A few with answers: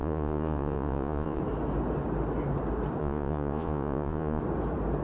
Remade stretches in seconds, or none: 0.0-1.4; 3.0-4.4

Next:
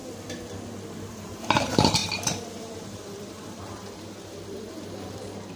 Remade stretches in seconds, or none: 1.1-5.6

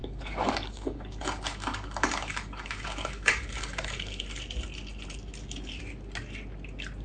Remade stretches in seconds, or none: 0.0-4.2

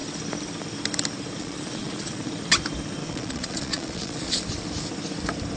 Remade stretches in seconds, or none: 1.4-2.3; 3.0-4.4

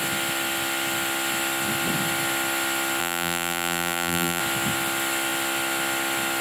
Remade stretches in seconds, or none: 3.0-4.4